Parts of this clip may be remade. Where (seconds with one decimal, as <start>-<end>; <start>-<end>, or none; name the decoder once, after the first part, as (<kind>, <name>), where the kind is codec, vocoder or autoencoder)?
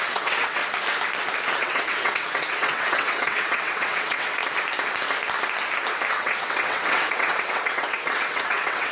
0.0-0.6 (vocoder, WaveNeXt); 1.6-4.4; 6.1-8.9